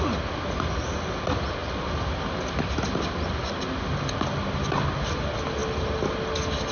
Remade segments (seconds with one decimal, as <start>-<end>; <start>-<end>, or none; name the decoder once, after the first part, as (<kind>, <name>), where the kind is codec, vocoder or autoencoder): none